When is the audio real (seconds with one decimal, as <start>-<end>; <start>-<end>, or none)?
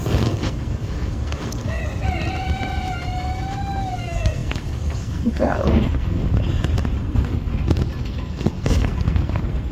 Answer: 1.8-4.0; 6.2-7.0; 7.5-8.0